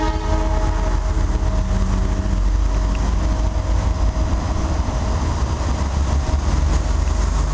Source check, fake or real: real